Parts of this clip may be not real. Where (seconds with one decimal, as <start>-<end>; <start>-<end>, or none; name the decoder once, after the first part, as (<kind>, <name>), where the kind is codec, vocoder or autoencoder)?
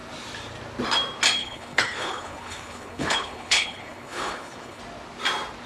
1.4-4.8 (codec, HILCodec)